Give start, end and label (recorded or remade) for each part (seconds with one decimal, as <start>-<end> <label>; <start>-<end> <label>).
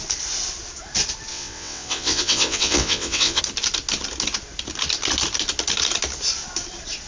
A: 0.0-1.3 recorded; 1.3-3.4 remade; 3.4-7.1 recorded